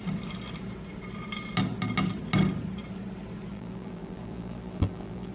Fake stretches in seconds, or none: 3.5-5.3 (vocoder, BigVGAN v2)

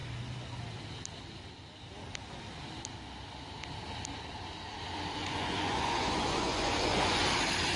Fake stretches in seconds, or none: 5.2-7.2 (vocoder, Vocos)

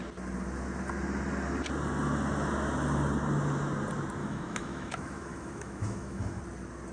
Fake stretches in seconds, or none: 4.2-6.4 (autoencoder, DAC-VAE)

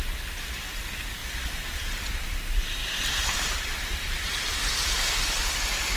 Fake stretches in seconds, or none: 1.2-2.1 (vocoder, BigVGAN v2); 2.8-5.2